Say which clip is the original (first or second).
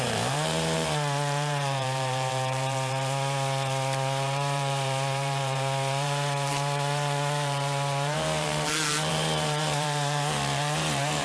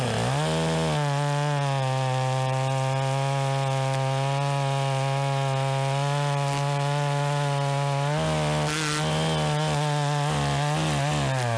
second